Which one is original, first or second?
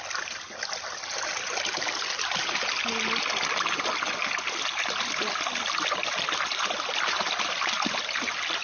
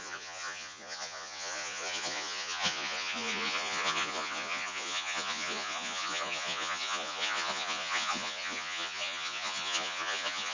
first